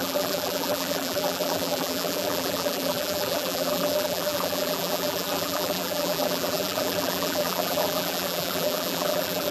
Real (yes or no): no